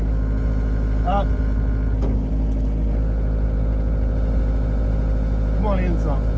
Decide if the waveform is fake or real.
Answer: real